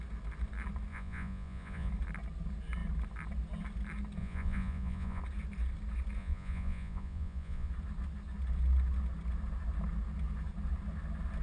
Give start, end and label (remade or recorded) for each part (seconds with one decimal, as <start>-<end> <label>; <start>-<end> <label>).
0.0-0.9 recorded; 0.9-1.9 remade; 1.9-4.2 recorded; 4.2-5.2 remade; 5.2-6.2 recorded; 6.2-7.7 remade; 7.7-11.4 recorded